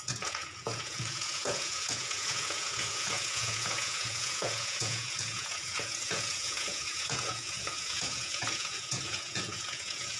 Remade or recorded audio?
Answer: remade